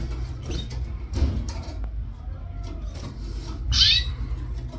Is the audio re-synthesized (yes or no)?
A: no